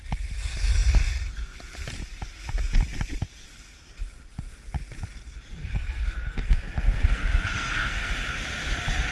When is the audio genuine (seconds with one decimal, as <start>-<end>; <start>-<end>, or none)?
0.0-5.5; 8.1-9.1